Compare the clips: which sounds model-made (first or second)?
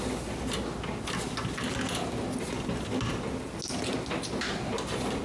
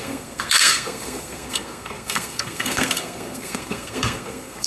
second